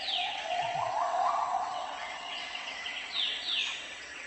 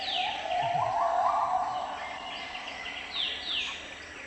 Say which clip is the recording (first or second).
second